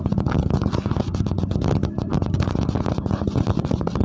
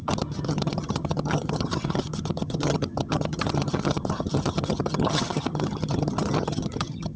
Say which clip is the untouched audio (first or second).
first